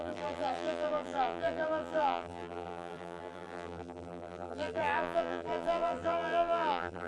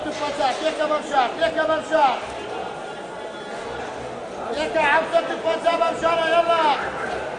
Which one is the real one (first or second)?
second